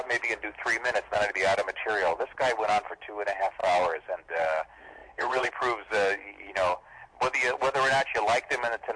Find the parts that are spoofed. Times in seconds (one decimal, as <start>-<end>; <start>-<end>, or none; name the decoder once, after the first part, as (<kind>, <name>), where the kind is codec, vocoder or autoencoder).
5.0-5.5 (vocoder, WaveNeXt)